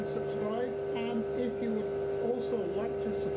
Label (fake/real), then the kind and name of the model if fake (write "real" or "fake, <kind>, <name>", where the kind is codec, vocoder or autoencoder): real